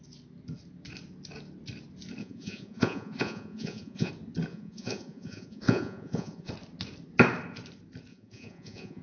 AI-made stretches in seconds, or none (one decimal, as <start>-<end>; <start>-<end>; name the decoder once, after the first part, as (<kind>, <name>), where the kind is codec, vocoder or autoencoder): 2.2-4.1 (vocoder, Vocos); 4.5-6.5; 8.1-9.0